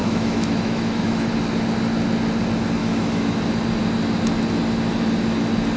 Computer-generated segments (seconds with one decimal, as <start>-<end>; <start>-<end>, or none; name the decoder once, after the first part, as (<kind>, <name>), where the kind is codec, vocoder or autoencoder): 0.0-1.3 (autoencoder, DAC-VAE); 2.8-3.4